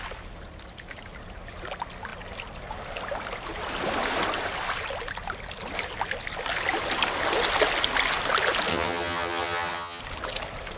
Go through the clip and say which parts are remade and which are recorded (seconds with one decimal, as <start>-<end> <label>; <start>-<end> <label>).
0.0-8.7 recorded; 8.7-10.0 remade; 10.0-10.8 recorded